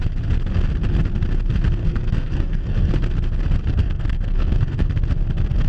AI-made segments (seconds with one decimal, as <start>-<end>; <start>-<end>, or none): 1.8-2.9; 3.8-4.9